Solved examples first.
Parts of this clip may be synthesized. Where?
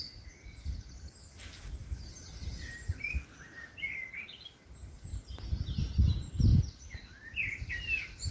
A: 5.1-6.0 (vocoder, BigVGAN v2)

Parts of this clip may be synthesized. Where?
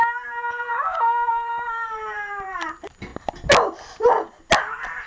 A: 0.0-3.1 (vocoder, BigVGAN v2)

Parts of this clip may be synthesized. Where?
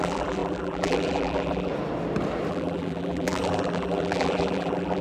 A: 0.0-1.7 (vocoder, BigVGAN v2); 2.5-5.0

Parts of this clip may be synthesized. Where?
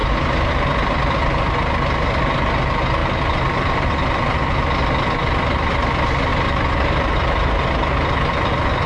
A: 3.0-3.8 (vocoder, BigVGAN v2); 6.3-7.9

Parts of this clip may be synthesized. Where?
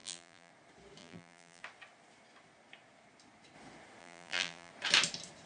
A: 0.0-0.5 (vocoder, BigVGAN v2); 1.0-1.6; 4.0-4.7